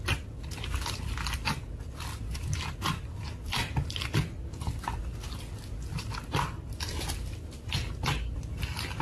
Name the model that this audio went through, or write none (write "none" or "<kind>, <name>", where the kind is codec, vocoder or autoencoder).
none